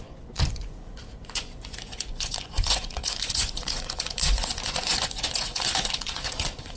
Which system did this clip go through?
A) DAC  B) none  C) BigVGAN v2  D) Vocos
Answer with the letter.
D